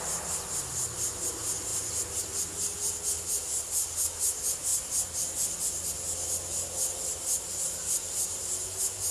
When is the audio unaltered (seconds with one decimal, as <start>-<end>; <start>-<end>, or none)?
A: 0.0-9.1